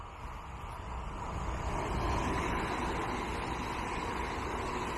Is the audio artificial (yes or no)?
no